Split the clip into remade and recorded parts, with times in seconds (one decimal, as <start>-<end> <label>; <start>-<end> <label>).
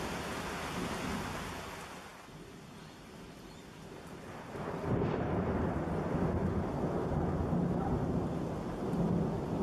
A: 0.0-9.6 recorded